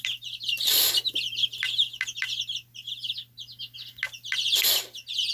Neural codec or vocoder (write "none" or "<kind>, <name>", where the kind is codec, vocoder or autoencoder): none